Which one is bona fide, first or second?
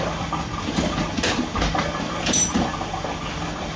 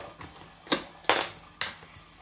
second